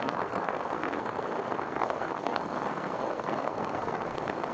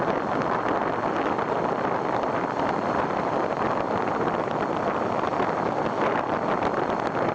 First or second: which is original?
second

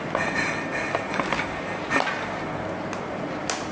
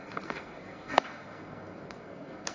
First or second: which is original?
first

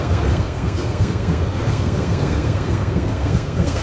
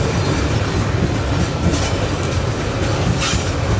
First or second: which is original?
second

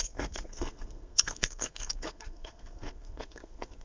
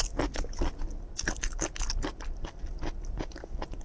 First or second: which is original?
second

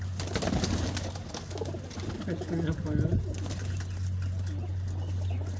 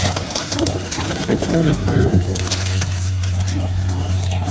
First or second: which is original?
first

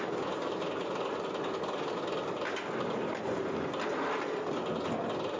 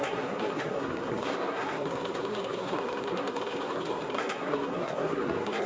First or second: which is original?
first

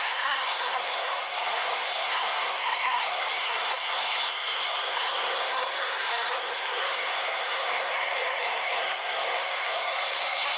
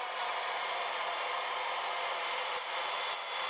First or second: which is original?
second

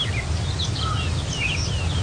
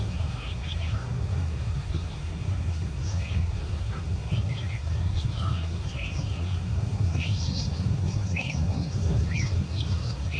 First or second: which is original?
first